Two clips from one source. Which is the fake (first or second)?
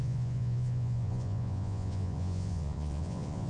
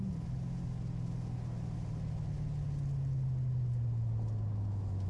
first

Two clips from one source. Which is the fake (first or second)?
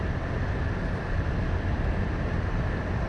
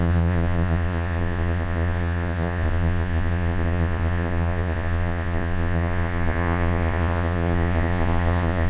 second